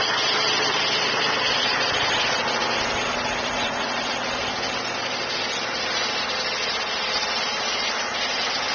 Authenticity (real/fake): real